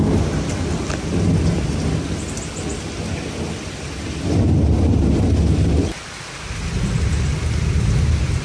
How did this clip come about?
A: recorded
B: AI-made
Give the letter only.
A